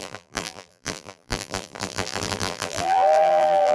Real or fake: fake